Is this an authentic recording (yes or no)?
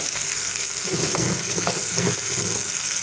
no